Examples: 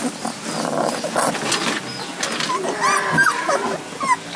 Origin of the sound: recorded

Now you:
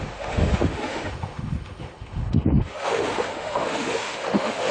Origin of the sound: remade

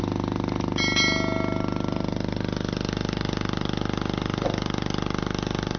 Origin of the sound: recorded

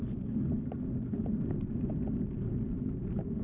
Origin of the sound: recorded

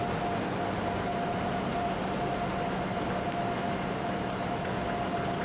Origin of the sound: recorded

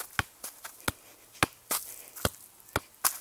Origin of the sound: recorded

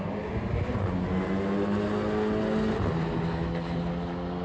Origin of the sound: recorded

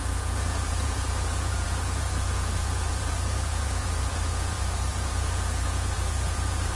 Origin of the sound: remade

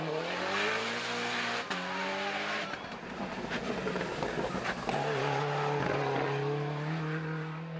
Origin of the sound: recorded